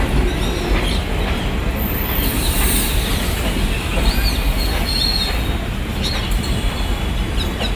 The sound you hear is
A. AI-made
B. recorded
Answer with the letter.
B